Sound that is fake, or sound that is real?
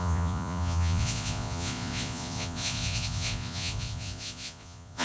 fake